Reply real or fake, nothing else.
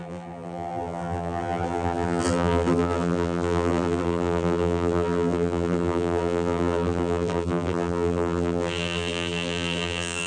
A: fake